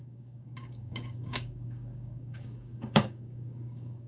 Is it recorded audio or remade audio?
remade